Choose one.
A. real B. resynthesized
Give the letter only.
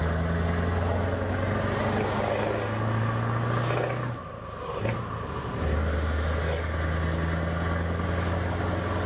A